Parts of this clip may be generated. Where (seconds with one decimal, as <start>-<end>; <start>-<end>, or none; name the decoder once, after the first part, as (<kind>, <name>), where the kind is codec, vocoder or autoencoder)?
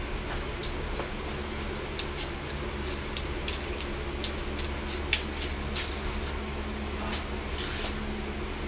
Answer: none